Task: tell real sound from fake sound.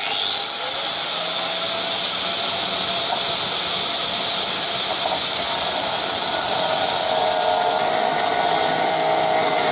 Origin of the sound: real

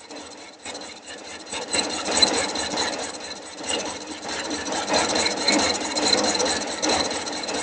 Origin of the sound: fake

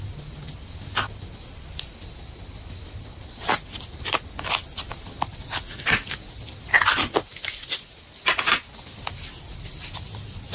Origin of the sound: real